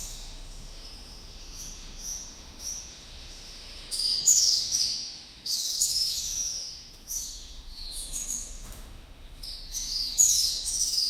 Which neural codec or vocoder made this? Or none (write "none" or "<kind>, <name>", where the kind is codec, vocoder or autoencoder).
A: autoencoder, DAC-VAE